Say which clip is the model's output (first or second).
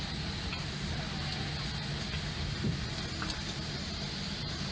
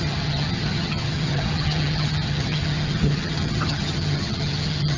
second